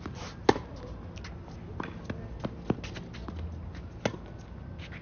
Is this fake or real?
real